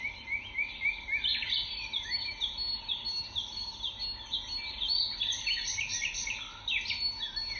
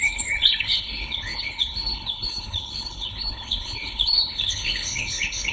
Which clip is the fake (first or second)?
second